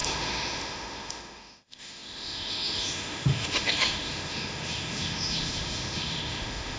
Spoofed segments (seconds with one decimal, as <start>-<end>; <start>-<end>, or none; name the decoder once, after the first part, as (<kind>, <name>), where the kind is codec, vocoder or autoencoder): 0.0-6.8 (autoencoder, DAC-VAE)